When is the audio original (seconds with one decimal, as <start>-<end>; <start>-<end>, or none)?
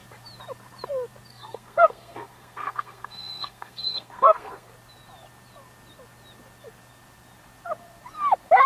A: 0.0-1.3; 4.7-8.7